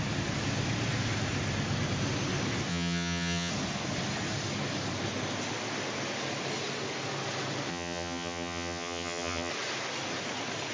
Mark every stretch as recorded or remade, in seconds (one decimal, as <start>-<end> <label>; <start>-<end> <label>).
0.0-2.7 recorded; 2.7-3.5 remade; 3.5-7.7 recorded; 7.7-9.5 remade; 9.5-10.7 recorded